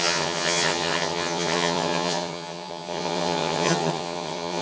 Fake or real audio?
fake